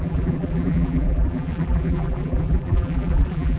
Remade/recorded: remade